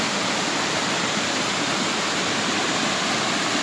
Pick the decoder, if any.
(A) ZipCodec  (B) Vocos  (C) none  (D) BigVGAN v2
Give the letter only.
C